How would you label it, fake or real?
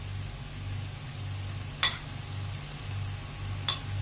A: real